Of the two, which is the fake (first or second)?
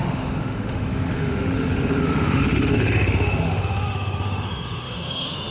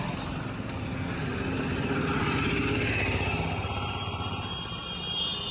first